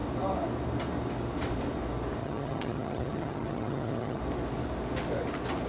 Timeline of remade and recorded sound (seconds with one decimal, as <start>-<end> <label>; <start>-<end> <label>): 0.0-2.2 recorded; 2.2-4.2 remade; 4.2-5.7 recorded